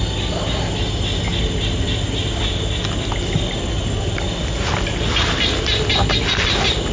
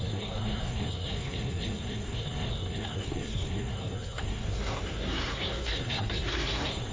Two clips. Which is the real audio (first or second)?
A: first